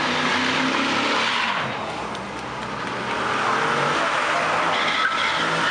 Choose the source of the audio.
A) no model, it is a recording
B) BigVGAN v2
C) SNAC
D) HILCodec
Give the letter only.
A